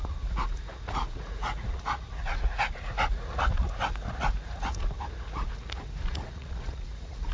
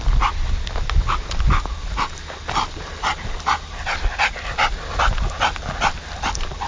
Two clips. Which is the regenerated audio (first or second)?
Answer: first